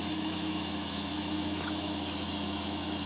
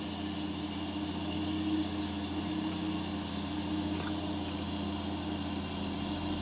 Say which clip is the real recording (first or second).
second